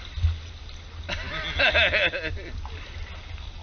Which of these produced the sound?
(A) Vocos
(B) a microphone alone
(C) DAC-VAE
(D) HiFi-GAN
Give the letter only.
B